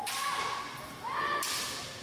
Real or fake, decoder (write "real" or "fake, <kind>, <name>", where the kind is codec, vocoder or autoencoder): real